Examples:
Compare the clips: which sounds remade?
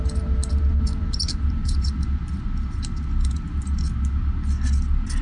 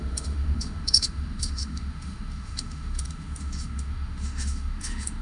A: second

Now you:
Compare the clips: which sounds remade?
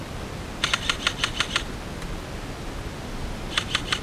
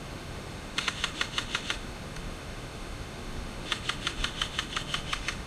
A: second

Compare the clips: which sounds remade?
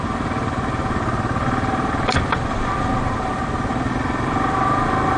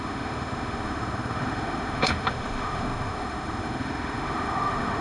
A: second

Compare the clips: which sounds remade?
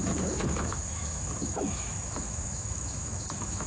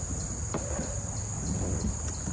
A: first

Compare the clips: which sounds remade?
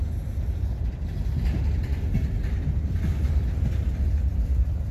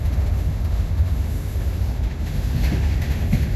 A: second